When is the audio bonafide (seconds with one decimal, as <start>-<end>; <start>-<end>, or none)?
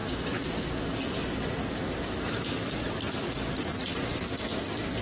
0.0-5.0